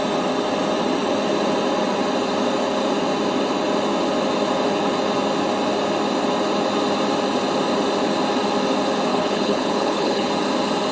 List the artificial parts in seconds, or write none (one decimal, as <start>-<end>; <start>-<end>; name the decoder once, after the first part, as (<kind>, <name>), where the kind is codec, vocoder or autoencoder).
9.1-10.3 (codec, HILCodec)